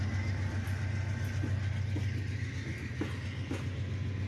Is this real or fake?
real